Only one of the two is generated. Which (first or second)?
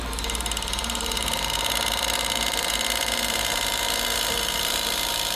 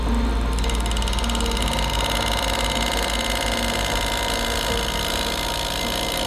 first